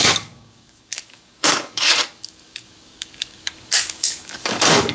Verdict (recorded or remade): remade